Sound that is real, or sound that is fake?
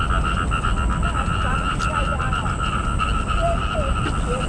real